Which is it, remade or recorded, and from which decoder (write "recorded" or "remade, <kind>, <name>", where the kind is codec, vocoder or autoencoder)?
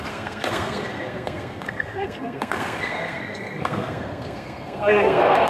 remade, codec, SNAC